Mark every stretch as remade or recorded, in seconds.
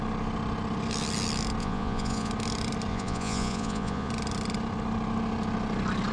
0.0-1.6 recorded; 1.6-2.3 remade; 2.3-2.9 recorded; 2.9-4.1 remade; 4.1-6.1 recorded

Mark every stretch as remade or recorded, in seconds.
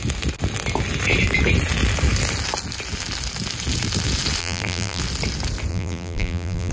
0.0-4.4 recorded; 4.4-5.0 remade; 5.0-5.7 recorded; 5.7-6.7 remade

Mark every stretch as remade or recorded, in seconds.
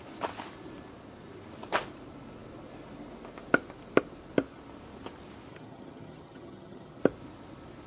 0.0-5.5 recorded; 5.5-7.0 remade; 7.0-7.9 recorded